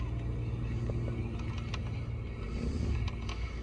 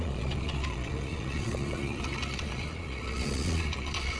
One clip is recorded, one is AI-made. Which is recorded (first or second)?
first